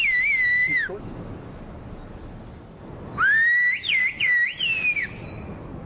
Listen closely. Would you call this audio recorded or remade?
recorded